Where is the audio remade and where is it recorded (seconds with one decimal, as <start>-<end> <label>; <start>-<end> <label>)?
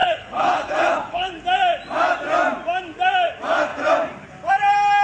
0.0-1.3 remade; 1.3-5.0 recorded